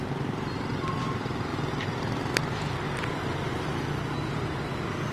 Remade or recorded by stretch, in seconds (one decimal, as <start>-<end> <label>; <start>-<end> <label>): 0.0-0.9 remade; 0.9-5.1 recorded